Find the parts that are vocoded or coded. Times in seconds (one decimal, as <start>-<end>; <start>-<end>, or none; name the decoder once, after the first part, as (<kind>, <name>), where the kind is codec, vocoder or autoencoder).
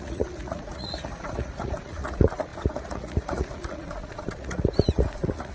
0.0-5.5 (vocoder, Vocos)